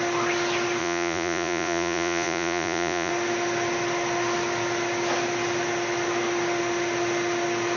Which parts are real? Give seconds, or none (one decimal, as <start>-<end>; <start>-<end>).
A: 0.0-0.8; 3.1-7.8